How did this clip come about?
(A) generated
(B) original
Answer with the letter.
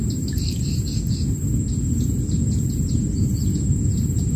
B